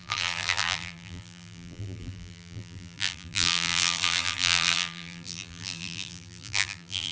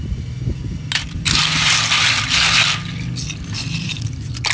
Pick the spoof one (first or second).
first